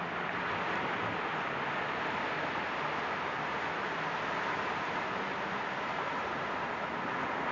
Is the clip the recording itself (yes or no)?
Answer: yes